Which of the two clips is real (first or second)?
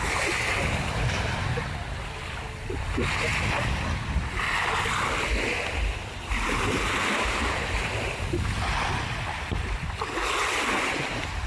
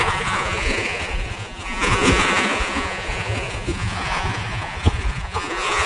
first